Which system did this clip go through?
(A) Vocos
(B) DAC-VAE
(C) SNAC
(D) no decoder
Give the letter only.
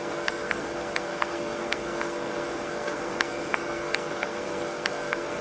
C